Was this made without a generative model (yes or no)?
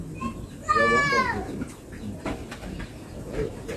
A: yes